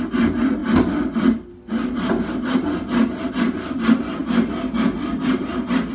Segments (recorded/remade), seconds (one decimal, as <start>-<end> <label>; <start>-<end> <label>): 0.0-5.9 recorded